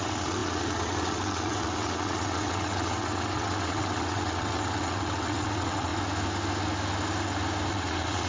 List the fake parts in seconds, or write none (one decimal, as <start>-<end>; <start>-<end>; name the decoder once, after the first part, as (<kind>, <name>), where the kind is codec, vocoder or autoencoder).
0.0-5.9 (vocoder, WaveNeXt); 7.7-8.3